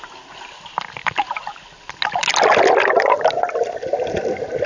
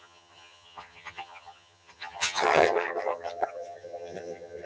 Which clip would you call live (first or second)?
first